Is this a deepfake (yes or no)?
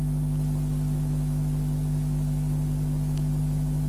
no